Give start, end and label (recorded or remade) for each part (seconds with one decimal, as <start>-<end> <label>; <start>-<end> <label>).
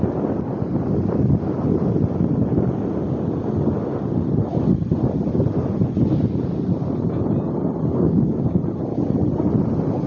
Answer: 0.0-7.9 recorded; 7.9-8.6 remade; 8.6-10.1 recorded